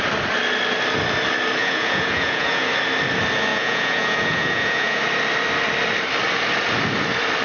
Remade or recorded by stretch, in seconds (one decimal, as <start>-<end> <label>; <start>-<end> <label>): 0.0-1.6 recorded; 1.6-2.7 remade; 2.7-3.5 recorded; 3.5-5.0 remade; 5.0-7.4 recorded